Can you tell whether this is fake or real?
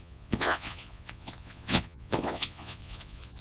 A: fake